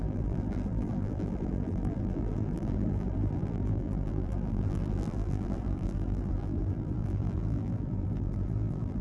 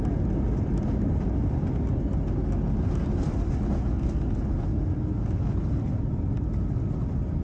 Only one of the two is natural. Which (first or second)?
second